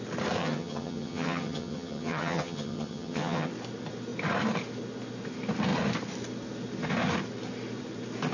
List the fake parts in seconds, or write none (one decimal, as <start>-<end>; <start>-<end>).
0.4-3.5